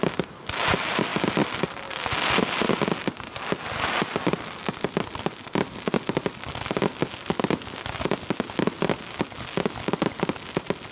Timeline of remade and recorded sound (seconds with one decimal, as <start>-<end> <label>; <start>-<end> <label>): 0.0-10.9 recorded